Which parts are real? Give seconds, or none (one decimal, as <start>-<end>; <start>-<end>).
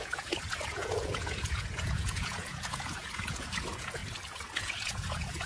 4.0-4.6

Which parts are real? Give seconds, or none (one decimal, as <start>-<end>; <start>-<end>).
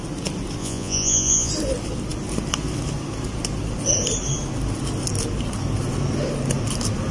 0.0-0.6; 1.5-7.1